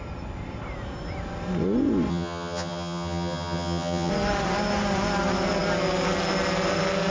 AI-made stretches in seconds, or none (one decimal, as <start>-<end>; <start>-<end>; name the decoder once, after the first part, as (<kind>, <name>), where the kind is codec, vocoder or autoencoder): 2.1-4.1 (vocoder, HiFi-GAN)